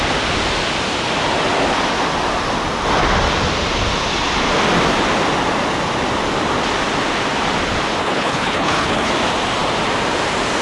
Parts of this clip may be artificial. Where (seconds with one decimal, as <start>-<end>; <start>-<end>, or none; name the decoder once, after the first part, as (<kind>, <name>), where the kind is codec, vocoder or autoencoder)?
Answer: 8.0-9.1 (codec, HILCodec)